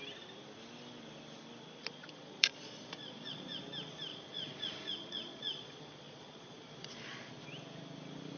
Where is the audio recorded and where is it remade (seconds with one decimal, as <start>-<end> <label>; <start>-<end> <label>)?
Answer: 0.0-1.8 recorded; 1.8-3.6 remade; 3.6-4.1 recorded; 4.1-7.3 remade; 7.3-8.4 recorded